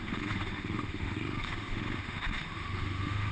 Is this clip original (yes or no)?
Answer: no